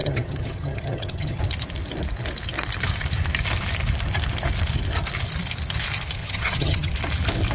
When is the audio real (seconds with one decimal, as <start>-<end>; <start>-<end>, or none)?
1.4-6.2; 6.9-7.5